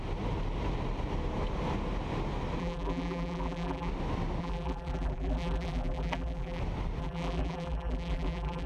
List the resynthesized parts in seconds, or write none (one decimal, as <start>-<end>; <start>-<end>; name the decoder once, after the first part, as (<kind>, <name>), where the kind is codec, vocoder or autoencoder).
2.6-3.9 (vocoder, BigVGAN v2); 4.4-6.6; 7.0-8.7